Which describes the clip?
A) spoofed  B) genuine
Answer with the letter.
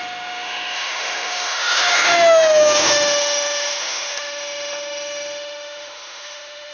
A